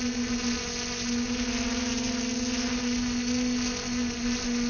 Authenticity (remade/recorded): recorded